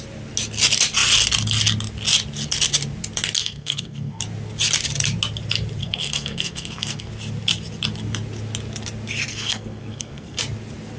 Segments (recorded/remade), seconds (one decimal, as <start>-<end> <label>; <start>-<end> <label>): 0.0-3.4 recorded; 3.4-4.2 remade; 4.2-5.8 recorded; 5.8-7.1 remade; 7.1-9.3 recorded; 9.3-10.4 remade; 10.4-11.0 recorded